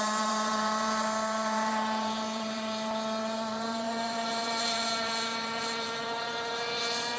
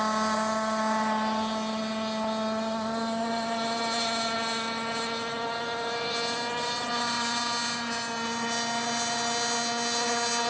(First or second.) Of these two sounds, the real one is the second